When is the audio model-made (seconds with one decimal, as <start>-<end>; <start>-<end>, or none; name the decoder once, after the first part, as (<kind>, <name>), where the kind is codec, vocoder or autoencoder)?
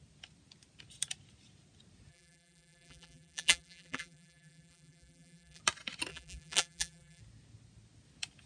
2.1-5.6 (vocoder, BigVGAN v2); 6.1-7.2